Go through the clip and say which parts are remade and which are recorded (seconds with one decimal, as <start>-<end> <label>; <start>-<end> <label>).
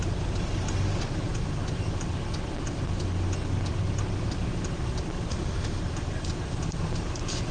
0.0-5.3 recorded; 5.3-5.8 remade; 5.8-7.5 recorded